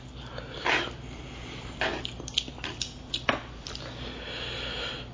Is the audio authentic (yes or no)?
yes